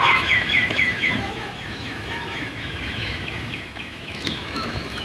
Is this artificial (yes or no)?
yes